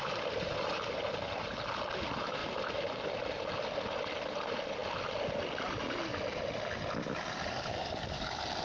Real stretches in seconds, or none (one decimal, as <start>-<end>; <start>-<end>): 0.0-8.6